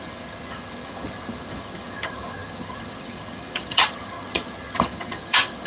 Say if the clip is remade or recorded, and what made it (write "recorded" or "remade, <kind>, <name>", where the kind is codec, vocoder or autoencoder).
remade, vocoder, HiFi-GAN